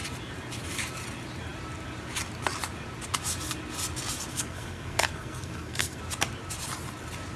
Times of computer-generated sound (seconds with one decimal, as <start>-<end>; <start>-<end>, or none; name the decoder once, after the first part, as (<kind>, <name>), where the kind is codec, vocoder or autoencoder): 4.3-6.0 (codec, SNAC)